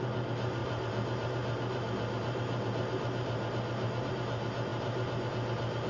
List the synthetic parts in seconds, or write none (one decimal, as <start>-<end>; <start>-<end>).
0.0-5.9